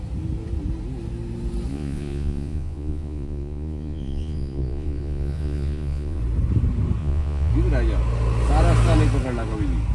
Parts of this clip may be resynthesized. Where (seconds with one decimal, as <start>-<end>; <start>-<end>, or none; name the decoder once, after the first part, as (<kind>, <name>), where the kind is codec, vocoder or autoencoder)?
1.7-6.2 (vocoder, Vocos); 7.0-7.5